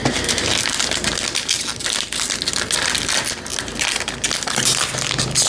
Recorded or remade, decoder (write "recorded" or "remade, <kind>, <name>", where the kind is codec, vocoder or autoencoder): recorded